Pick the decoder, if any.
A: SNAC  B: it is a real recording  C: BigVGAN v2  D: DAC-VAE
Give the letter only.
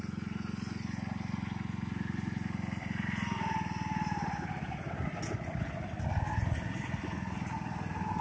B